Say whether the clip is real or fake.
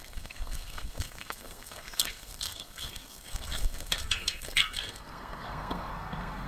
fake